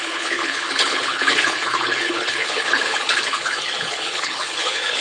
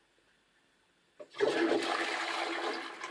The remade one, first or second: first